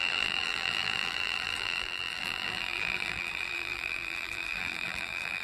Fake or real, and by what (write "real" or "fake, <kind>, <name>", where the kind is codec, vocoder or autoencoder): fake, vocoder, BigVGAN v2